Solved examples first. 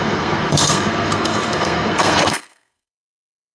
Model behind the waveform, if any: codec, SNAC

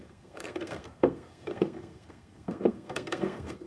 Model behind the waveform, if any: codec, SNAC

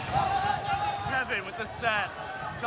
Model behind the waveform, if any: none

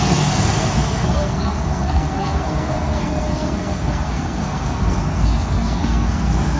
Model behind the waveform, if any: codec, SNAC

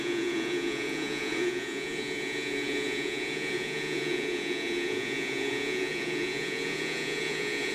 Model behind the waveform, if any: vocoder, Vocos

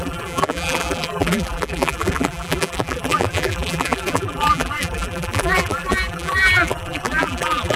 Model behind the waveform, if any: vocoder, BigVGAN v2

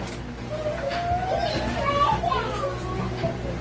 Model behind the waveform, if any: none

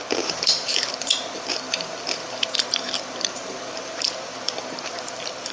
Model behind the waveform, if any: vocoder, BigVGAN v2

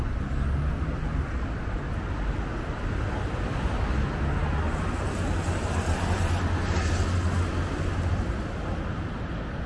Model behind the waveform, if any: none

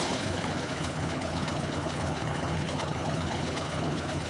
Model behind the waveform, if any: codec, HILCodec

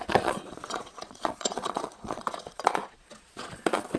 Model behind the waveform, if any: vocoder, Vocos